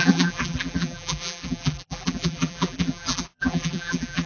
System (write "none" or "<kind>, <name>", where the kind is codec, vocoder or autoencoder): vocoder, BigVGAN v2